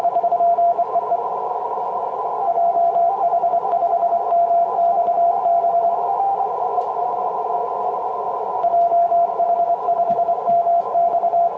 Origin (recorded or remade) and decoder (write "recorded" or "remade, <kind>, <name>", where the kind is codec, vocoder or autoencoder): recorded